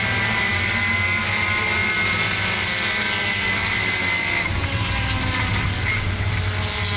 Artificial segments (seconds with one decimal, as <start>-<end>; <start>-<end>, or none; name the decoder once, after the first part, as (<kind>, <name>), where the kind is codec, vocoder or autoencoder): none